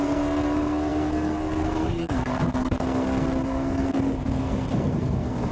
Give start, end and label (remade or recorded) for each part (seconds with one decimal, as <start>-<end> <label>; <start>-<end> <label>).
0.0-5.5 remade